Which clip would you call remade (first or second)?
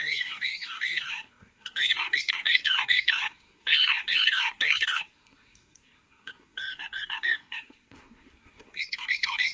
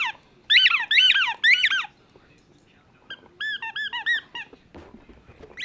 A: first